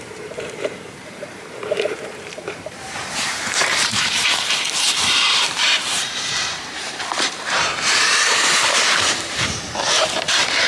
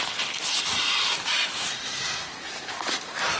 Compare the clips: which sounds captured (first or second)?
second